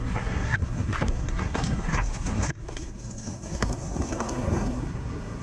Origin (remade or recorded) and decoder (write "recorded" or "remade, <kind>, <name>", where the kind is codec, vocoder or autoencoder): remade, codec, SNAC